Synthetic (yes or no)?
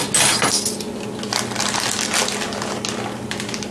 no